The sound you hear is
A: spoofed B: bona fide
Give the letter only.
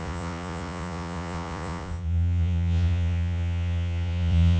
A